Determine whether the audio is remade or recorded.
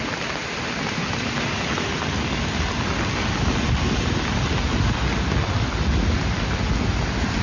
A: recorded